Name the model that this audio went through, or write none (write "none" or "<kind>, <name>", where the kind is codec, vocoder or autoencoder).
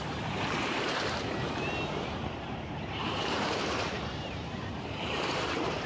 vocoder, BigVGAN v2